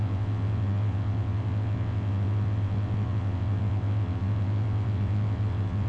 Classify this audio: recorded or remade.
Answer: remade